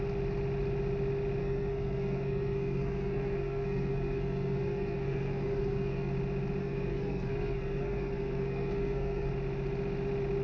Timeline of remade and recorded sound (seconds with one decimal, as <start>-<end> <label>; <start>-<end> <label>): 0.0-1.4 recorded; 1.4-6.1 remade; 6.1-6.6 recorded; 6.6-9.3 remade; 9.3-10.4 recorded